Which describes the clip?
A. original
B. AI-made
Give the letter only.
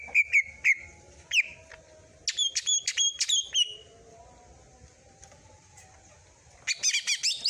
A